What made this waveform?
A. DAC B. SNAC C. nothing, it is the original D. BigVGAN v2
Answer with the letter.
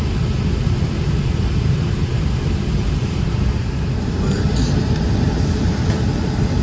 D